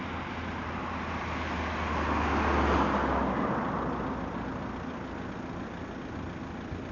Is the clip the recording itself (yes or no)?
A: yes